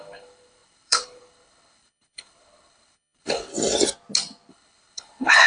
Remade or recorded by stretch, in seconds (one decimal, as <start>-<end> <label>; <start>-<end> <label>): 0.0-3.5 remade; 3.5-4.5 recorded; 4.5-5.5 remade